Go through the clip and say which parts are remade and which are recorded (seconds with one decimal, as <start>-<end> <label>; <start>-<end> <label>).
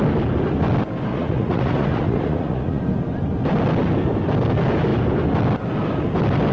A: 0.0-1.1 recorded; 1.1-2.8 remade; 2.8-6.5 recorded